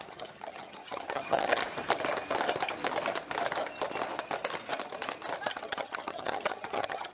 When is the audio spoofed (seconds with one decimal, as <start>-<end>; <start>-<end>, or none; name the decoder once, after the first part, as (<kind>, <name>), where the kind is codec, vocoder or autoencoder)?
0.0-1.6 (vocoder, HiFi-GAN); 5.5-7.1